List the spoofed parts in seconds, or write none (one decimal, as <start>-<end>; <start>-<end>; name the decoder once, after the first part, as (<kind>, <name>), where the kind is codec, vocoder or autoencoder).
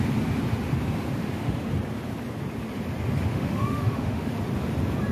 1.2-1.7 (autoencoder, DAC-VAE); 3.3-4.3